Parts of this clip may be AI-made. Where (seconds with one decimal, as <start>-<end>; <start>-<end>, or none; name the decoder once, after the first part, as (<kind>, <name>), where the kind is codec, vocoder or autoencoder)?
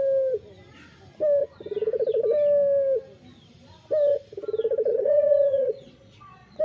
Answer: 4.9-6.6 (vocoder, Vocos)